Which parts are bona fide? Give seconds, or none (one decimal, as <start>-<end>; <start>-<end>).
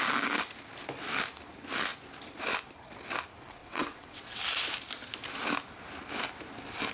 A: 0.0-3.6; 4.4-6.9